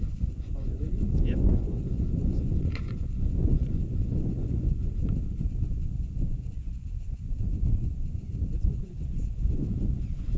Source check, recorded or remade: remade